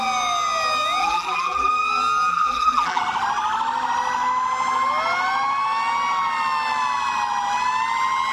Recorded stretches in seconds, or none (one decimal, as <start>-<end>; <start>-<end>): 0.0-1.0; 1.7-2.3; 3.0-8.3